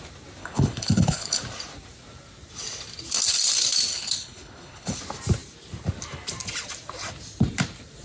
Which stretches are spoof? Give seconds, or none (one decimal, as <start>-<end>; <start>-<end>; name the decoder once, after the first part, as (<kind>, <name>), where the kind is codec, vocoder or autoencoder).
0.4-1.4 (codec, HILCodec); 3.9-5.0